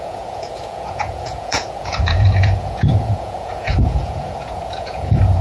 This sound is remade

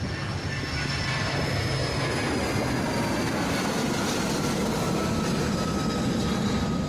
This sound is recorded